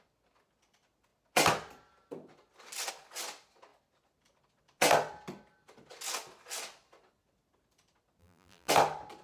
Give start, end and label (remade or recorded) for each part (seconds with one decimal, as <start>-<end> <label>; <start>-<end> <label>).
0.0-8.2 recorded; 8.2-8.7 remade; 8.7-9.2 recorded